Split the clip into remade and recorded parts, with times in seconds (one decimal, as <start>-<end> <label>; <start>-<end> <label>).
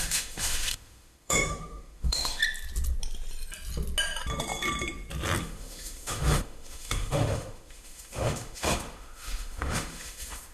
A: 0.0-2.4 remade; 2.4-5.4 recorded; 5.4-10.5 remade